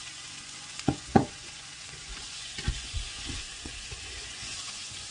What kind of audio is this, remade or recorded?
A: remade